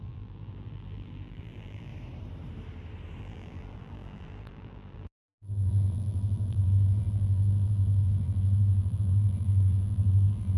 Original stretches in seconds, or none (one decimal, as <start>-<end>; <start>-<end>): 1.9-3.2